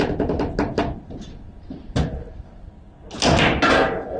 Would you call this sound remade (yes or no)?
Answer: no